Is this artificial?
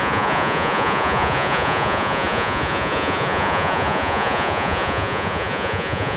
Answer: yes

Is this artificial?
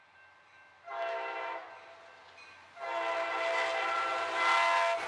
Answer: no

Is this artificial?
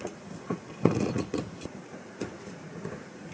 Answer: yes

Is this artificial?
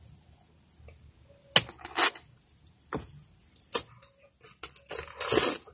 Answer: no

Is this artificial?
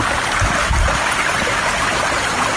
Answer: no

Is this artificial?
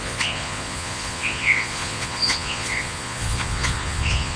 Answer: yes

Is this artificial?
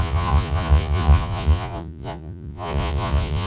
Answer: yes